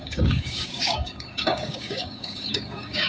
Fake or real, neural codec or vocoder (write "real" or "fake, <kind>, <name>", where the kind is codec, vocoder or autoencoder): fake, codec, DAC